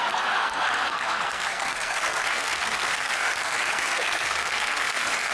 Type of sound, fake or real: fake